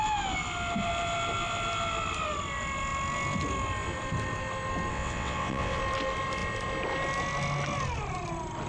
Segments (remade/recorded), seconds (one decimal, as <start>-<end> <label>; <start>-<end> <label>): 0.0-4.9 recorded; 4.9-5.8 remade; 5.8-8.7 recorded